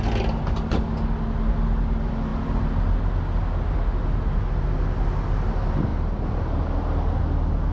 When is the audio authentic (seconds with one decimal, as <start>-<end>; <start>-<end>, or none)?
0.0-7.7